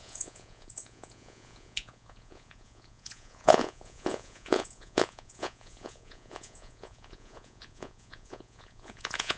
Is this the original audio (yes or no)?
no